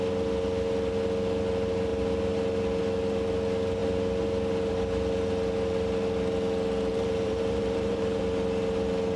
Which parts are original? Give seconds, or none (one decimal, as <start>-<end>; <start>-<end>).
0.0-6.9; 8.2-9.2